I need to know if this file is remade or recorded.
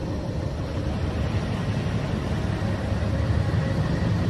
recorded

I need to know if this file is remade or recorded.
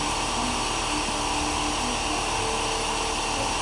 recorded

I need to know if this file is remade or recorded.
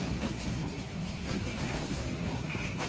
remade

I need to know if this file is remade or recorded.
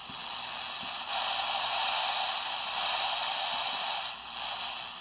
recorded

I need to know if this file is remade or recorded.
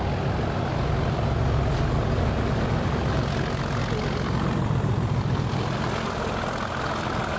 recorded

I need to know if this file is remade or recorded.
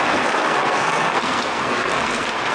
remade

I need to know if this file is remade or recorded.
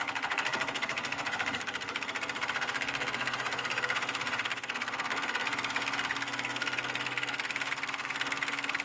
remade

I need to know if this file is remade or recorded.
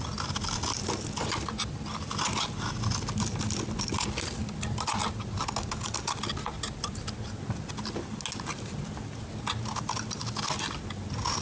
recorded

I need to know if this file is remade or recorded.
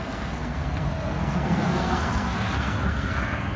remade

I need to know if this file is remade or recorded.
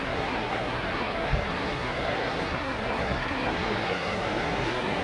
remade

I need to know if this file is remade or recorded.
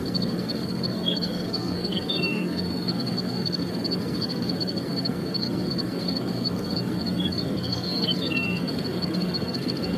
remade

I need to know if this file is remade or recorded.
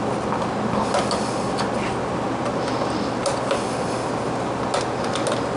recorded